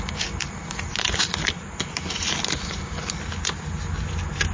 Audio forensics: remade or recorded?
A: recorded